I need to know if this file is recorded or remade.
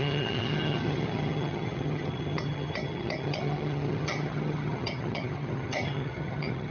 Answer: remade